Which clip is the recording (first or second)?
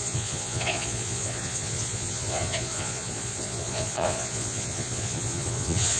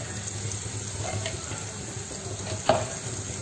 second